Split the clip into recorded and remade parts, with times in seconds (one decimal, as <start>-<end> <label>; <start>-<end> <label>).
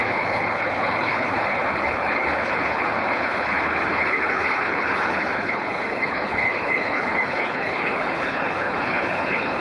0.0-9.6 remade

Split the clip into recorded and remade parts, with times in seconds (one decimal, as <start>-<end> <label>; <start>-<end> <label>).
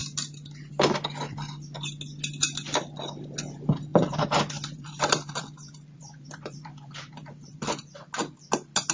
0.0-3.9 recorded; 3.9-7.6 remade; 7.6-8.9 recorded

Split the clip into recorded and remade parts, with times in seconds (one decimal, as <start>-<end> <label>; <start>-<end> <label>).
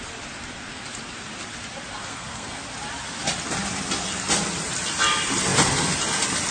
0.0-2.1 recorded; 2.1-2.6 remade; 2.6-6.5 recorded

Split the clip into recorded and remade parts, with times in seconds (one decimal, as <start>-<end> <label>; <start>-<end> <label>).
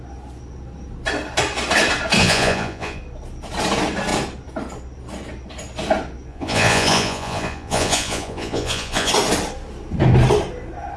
0.0-2.2 recorded; 2.2-3.0 remade; 3.0-6.3 recorded; 6.3-9.1 remade; 9.1-11.0 recorded